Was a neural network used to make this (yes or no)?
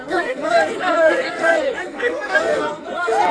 yes